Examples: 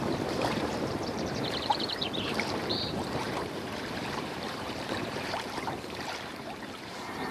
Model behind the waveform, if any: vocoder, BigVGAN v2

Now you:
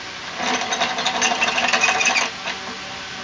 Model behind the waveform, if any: none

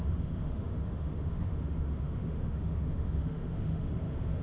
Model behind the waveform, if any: autoencoder, DAC-VAE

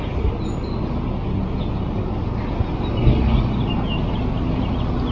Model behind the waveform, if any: none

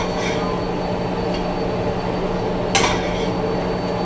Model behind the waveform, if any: none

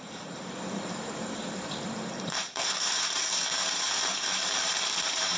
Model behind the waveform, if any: vocoder, BigVGAN v2